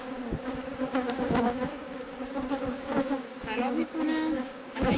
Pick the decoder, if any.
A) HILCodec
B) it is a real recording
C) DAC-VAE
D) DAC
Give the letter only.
D